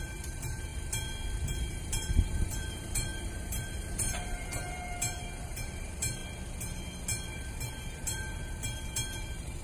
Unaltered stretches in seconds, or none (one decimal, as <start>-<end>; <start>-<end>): 0.7-1.6; 6.2-7.3